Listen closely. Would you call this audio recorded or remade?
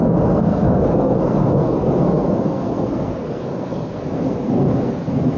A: remade